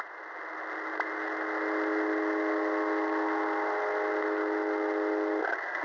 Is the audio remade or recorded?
recorded